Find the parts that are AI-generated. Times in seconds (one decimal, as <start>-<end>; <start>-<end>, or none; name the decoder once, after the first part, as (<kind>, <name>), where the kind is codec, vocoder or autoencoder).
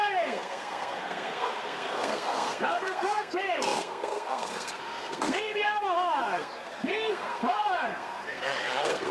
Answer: 0.0-9.1 (codec, SNAC)